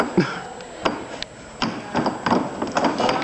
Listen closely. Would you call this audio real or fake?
real